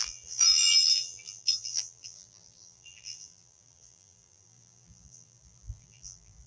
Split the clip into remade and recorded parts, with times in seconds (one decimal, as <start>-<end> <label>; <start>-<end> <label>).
0.0-6.5 remade